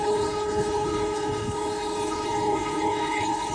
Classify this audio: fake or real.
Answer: fake